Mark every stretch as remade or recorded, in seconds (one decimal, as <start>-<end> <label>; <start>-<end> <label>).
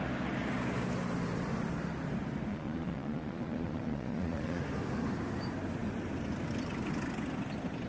0.0-2.5 recorded; 2.5-4.6 remade; 4.6-7.9 recorded